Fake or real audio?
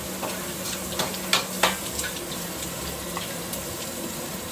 real